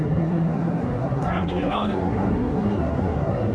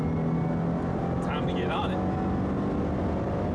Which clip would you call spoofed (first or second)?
first